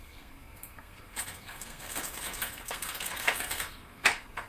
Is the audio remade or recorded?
remade